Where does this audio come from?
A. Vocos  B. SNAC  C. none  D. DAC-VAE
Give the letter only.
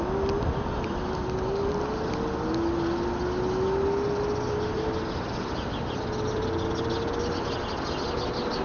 C